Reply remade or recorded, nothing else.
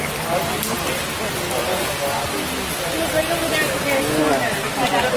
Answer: recorded